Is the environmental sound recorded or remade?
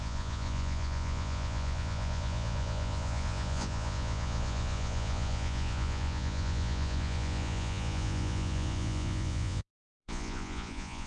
remade